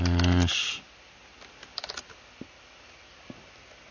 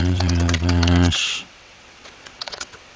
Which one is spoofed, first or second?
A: second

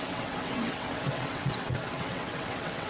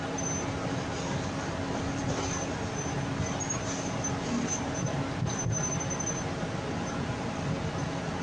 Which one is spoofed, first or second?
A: first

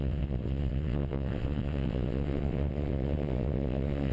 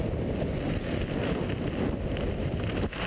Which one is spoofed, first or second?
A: first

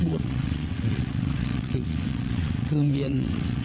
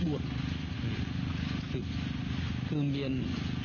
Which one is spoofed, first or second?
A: first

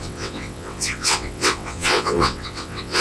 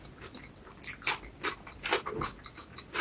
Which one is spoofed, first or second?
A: first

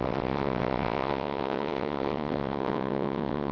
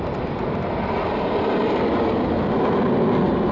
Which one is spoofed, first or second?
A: first